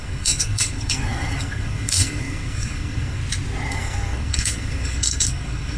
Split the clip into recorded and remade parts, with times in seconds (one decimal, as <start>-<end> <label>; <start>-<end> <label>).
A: 0.0-3.2 remade; 3.2-3.7 recorded; 3.7-5.8 remade